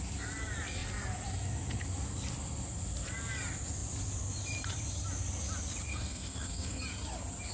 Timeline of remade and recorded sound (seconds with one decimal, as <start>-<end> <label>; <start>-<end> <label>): 0.0-5.9 recorded; 5.9-6.8 remade; 6.8-7.5 recorded